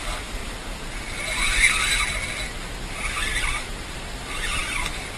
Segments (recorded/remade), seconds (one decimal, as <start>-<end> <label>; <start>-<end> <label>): 0.0-0.4 remade; 0.4-2.8 recorded; 2.8-5.2 remade